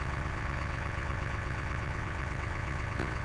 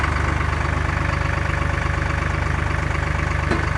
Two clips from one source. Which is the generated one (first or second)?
first